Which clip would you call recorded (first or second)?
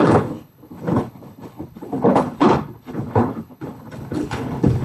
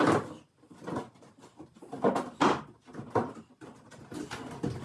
second